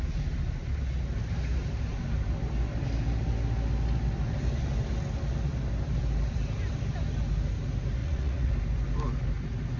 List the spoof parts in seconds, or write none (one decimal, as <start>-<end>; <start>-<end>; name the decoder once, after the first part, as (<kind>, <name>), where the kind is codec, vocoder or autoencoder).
8.0-8.5 (vocoder, Vocos)